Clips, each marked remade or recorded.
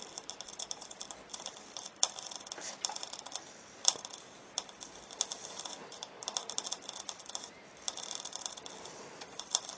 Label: recorded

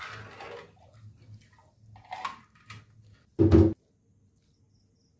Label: recorded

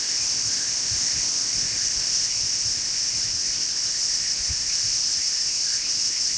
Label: remade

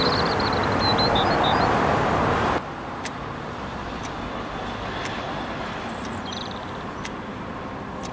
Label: recorded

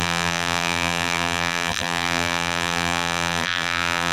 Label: remade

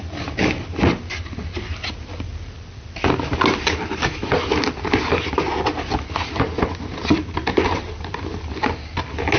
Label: recorded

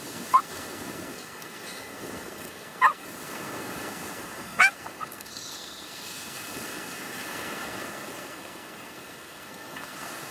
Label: remade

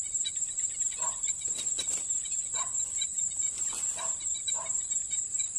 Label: recorded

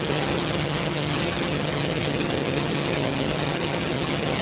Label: remade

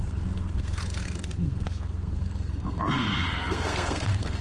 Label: remade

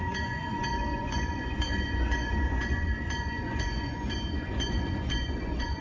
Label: remade